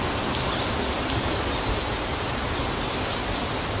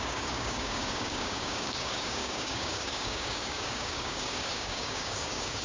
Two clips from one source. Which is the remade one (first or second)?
second